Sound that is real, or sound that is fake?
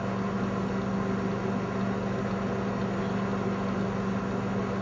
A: real